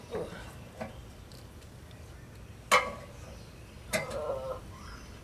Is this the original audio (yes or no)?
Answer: yes